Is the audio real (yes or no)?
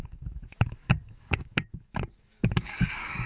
no